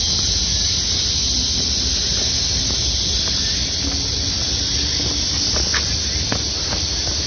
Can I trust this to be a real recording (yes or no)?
yes